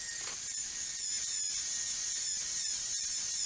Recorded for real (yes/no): yes